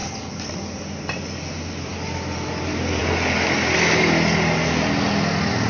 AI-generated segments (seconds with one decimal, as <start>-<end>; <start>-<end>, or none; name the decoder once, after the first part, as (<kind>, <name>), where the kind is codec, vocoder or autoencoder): none